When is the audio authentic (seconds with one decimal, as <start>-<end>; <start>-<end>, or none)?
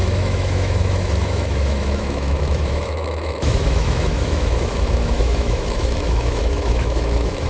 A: none